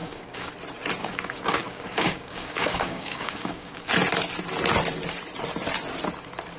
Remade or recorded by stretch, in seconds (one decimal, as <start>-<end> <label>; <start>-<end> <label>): 0.0-0.5 remade; 0.5-1.0 recorded; 1.0-3.9 remade; 3.9-6.6 recorded